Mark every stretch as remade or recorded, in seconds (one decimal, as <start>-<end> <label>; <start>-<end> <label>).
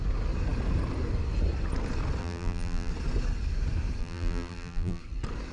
0.0-2.2 recorded; 2.2-2.9 remade; 2.9-4.0 recorded; 4.0-5.0 remade; 5.0-5.5 recorded